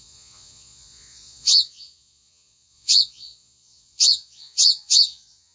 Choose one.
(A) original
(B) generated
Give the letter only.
B